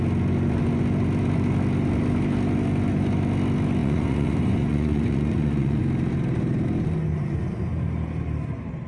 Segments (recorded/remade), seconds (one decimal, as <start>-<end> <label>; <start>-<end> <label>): 0.0-3.8 recorded; 3.8-5.8 remade; 5.8-8.9 recorded